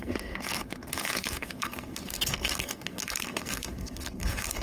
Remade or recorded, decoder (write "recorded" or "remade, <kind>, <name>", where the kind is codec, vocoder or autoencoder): remade, codec, SNAC